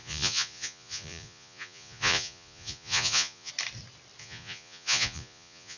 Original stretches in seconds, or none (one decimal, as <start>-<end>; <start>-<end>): 3.5-4.2